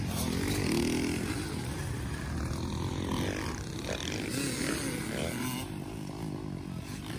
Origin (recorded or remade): recorded